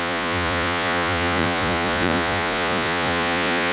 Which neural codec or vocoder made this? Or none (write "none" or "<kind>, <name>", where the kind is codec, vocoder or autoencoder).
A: vocoder, Vocos